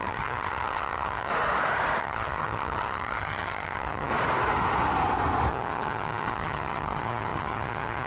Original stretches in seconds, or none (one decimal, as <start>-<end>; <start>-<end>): 1.3-2.0; 4.1-5.5